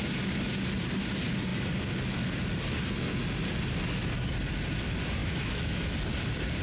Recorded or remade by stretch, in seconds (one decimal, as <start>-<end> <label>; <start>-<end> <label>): 0.0-5.2 recorded; 5.2-5.9 remade; 5.9-6.6 recorded